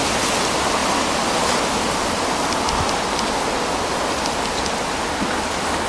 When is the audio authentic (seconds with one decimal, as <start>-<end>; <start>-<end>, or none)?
0.0-5.9